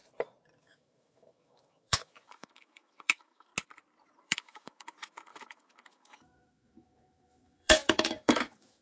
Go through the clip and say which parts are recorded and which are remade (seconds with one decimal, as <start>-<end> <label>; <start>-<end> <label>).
0.0-0.6 recorded; 0.6-3.5 remade; 3.5-4.2 recorded; 4.2-8.8 remade